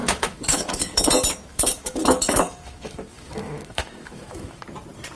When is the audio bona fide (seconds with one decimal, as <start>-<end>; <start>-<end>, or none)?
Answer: 1.1-1.5; 4.6-5.2